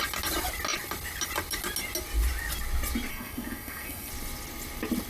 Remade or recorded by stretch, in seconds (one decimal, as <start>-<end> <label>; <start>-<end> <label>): 0.0-3.1 recorded; 3.1-4.1 remade; 4.1-5.1 recorded